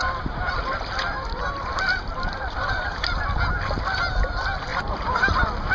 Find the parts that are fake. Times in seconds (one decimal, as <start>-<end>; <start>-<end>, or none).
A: 0.0-0.5; 1.4-3.2; 4.7-5.3